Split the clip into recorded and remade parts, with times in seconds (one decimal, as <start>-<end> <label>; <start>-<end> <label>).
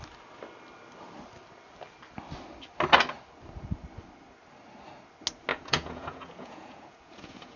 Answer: 0.0-5.5 recorded; 5.5-7.6 remade